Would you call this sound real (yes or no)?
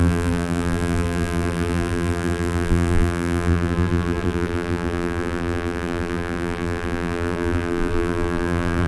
no